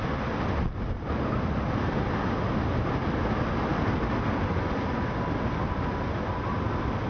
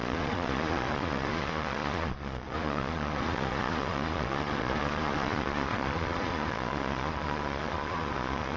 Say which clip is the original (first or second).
first